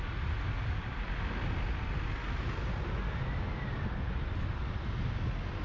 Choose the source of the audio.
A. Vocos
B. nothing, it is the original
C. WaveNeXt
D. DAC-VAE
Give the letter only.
B